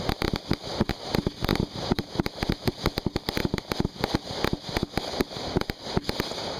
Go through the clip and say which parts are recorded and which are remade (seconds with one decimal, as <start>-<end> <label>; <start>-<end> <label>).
0.0-6.6 recorded